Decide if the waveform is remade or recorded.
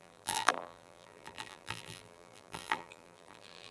remade